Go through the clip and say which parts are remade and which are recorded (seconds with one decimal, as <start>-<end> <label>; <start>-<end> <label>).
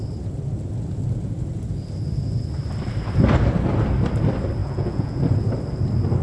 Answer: 0.0-4.6 recorded; 4.6-5.2 remade; 5.2-6.2 recorded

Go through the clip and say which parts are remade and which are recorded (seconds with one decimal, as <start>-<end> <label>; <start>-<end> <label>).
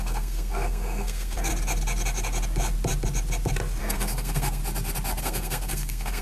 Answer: 0.0-1.5 remade; 1.5-3.8 recorded; 3.8-4.6 remade; 4.6-5.2 recorded; 5.2-6.2 remade